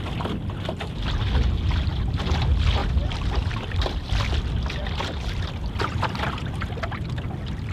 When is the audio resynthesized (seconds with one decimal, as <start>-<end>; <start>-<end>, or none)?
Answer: 2.8-4.1; 5.9-6.4